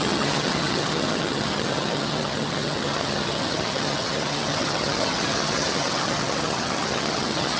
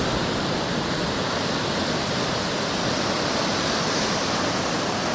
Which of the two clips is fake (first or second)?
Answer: first